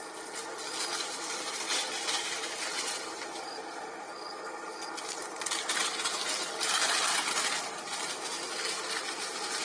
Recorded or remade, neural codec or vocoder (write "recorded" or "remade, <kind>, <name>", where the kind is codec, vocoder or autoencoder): recorded